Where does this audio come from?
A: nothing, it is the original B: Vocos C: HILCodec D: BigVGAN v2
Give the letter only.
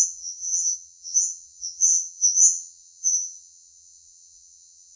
B